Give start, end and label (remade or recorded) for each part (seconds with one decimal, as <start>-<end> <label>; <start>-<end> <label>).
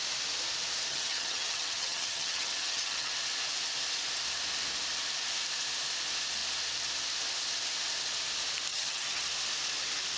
0.0-0.9 recorded; 0.9-3.1 remade; 3.1-8.7 recorded; 8.7-9.2 remade; 9.2-10.2 recorded